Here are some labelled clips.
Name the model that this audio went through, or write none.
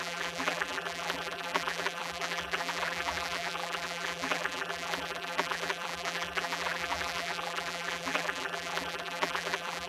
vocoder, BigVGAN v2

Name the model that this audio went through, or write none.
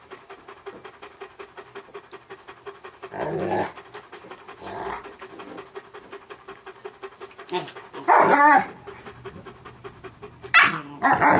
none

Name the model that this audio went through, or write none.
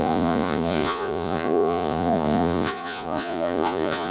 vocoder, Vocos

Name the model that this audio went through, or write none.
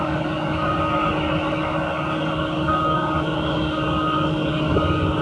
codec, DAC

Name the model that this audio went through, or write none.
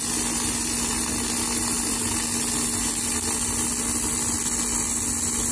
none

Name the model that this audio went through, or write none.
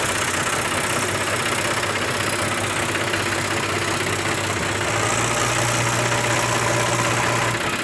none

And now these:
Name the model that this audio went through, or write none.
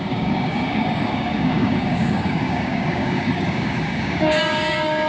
codec, DAC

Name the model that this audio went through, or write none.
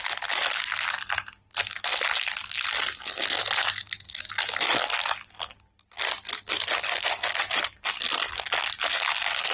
none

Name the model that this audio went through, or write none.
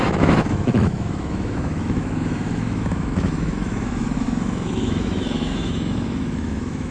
autoencoder, DAC-VAE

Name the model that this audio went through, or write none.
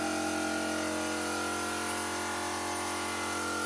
none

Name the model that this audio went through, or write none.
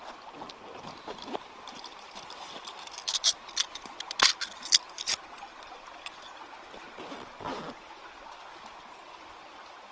none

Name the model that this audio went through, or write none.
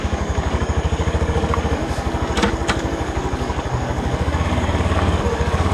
codec, DAC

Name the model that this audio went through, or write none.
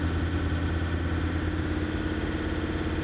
none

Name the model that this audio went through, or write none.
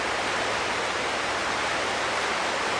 none